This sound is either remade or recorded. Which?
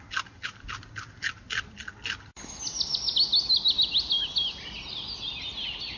recorded